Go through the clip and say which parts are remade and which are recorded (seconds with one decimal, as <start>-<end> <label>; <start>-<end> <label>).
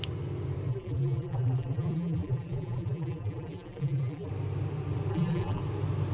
0.0-0.7 recorded; 0.7-4.3 remade; 4.3-5.1 recorded; 5.1-5.6 remade; 5.6-6.1 recorded